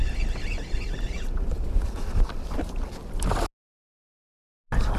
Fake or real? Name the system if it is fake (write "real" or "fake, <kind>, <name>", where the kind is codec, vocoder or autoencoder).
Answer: real